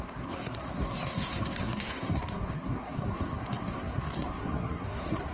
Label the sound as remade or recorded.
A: remade